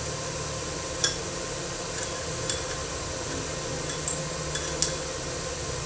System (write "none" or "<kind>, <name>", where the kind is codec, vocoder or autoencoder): none